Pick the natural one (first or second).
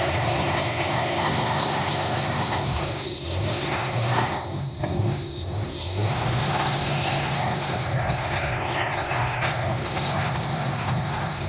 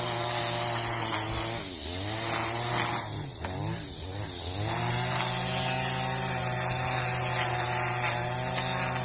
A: second